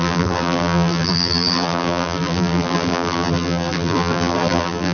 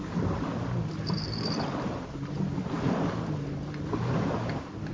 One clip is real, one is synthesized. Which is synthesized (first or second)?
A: first